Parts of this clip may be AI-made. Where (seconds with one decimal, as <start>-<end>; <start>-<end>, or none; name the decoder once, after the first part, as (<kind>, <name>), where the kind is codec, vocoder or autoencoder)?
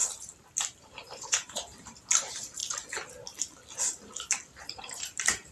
0.8-2.6 (vocoder, BigVGAN v2); 4.5-5.5